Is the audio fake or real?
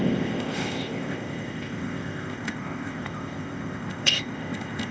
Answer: fake